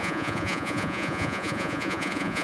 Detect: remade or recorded remade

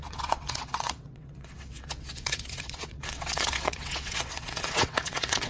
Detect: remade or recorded remade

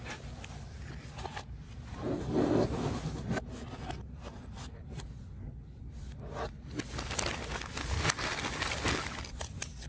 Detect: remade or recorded recorded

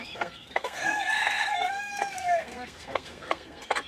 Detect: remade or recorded remade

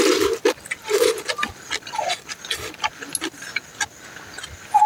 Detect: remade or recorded recorded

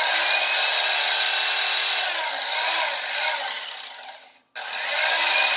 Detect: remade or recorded recorded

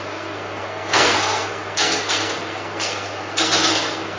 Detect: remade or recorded remade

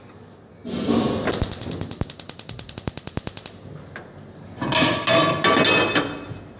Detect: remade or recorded recorded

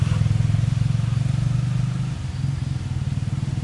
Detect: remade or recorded recorded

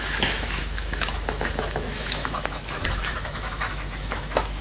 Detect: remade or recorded remade